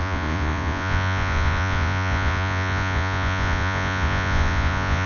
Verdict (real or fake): fake